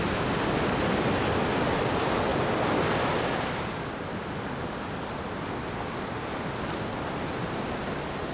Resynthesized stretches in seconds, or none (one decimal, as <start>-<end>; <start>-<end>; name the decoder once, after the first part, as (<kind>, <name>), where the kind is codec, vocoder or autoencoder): none